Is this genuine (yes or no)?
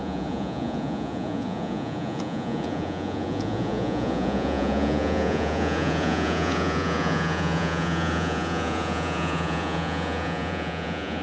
no